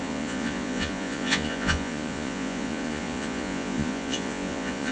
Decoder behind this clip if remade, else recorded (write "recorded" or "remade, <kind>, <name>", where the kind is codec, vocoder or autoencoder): remade, vocoder, Vocos